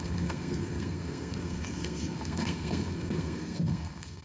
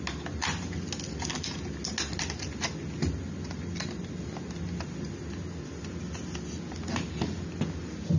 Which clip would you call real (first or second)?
second